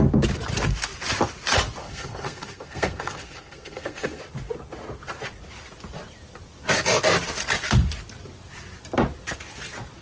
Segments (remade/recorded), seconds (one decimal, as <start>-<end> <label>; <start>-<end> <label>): 0.0-1.8 recorded; 1.8-4.2 remade; 4.2-10.0 recorded